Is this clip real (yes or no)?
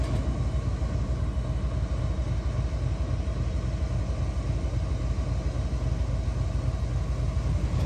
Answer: yes